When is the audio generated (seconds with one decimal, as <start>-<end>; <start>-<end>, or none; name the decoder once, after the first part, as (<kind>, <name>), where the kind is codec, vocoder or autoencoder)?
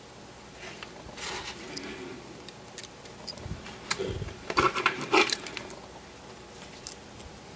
2.1-5.6 (vocoder, BigVGAN v2)